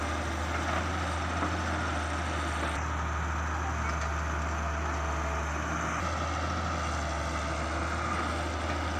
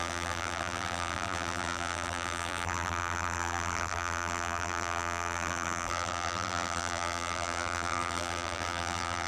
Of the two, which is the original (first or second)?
first